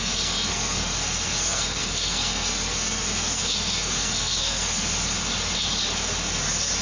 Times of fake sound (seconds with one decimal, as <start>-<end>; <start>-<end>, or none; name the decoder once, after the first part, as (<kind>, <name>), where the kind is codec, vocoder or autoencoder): 0.0-4.8 (codec, SNAC)